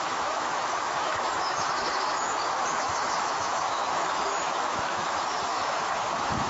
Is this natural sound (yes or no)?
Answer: no